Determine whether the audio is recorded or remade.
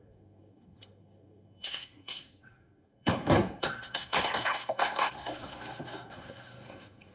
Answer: remade